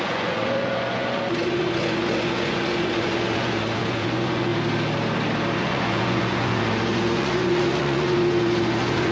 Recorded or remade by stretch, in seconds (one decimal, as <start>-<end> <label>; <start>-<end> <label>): 0.0-4.5 remade; 4.5-5.6 recorded; 5.6-9.1 remade